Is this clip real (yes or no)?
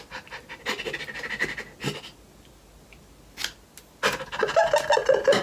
yes